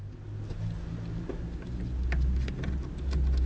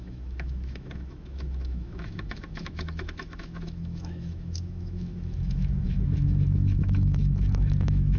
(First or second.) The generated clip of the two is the second